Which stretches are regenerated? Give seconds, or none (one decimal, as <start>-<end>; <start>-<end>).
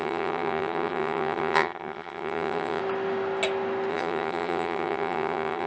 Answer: 0.0-2.8; 3.9-5.7